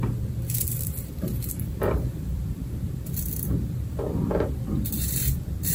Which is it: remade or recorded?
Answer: remade